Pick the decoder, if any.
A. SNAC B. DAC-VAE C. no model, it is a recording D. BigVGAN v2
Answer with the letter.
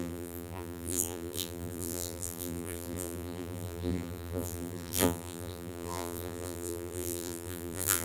D